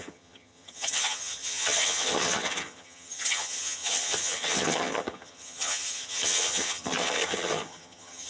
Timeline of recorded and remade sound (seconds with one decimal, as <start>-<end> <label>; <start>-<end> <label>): 0.0-8.3 remade